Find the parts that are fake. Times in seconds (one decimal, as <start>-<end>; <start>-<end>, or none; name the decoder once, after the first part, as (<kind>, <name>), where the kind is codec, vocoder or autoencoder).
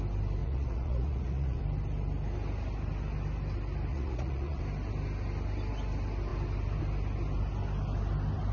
0.4-1.6 (vocoder, Vocos); 3.9-4.6